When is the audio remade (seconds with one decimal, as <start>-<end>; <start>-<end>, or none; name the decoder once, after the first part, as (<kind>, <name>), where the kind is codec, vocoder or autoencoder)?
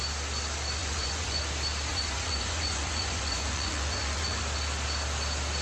0.8-1.4 (vocoder, Vocos); 1.9-4.4